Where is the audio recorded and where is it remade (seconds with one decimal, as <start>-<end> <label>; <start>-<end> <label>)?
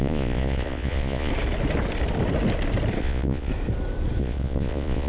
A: 0.0-1.3 remade; 1.3-3.0 recorded; 3.0-3.5 remade; 3.5-4.2 recorded; 4.2-5.1 remade